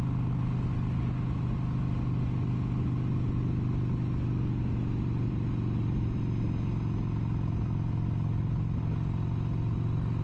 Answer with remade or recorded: recorded